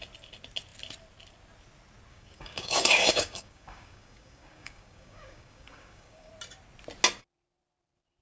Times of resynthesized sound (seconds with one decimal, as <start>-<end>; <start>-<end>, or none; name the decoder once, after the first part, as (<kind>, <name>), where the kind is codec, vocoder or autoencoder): 2.1-6.3 (codec, DAC)